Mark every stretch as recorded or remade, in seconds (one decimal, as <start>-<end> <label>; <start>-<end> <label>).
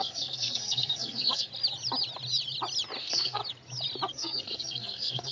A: 0.0-1.5 remade; 1.5-3.0 recorded; 3.0-3.4 remade; 3.4-4.1 recorded; 4.1-5.3 remade